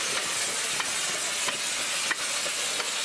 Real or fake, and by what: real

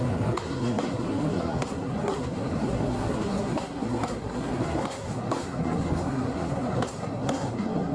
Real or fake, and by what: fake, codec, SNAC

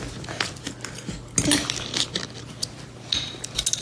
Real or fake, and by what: real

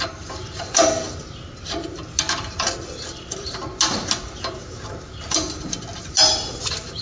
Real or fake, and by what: real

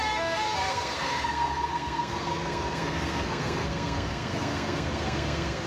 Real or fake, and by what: fake, codec, SNAC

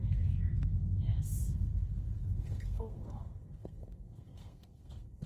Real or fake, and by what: fake, codec, SNAC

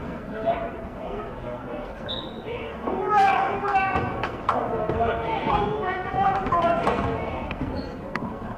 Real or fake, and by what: fake, codec, SNAC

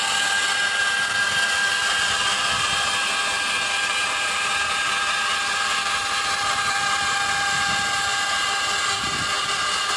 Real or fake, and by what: real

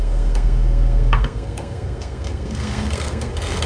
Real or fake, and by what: fake, codec, SNAC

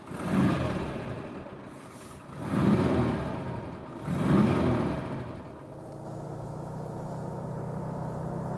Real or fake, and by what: real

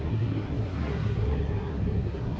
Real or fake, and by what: fake, codec, SNAC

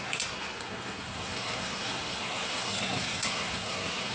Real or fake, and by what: fake, codec, SNAC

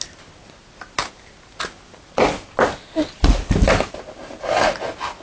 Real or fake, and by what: real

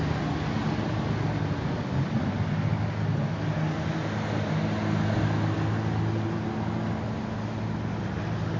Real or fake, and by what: real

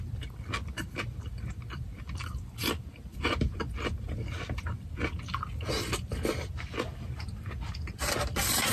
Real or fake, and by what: real